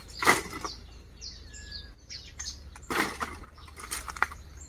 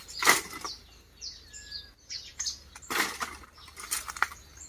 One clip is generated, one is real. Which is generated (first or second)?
first